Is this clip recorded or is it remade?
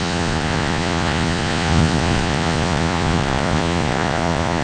remade